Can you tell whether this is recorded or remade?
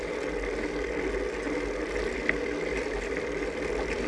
recorded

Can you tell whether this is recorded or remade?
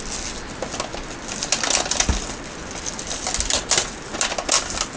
recorded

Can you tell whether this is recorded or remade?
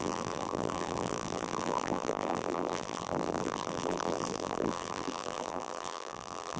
remade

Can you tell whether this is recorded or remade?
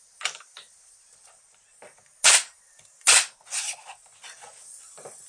recorded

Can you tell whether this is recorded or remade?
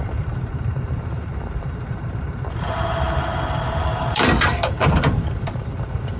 remade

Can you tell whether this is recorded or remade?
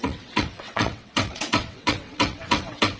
remade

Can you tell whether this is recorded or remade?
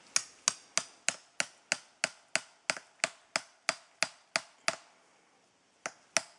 recorded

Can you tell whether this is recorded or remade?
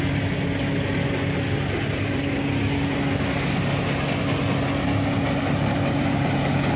recorded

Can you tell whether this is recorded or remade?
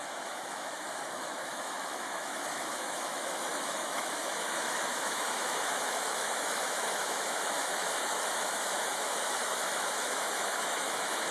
remade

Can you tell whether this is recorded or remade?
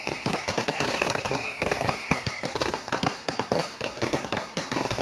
remade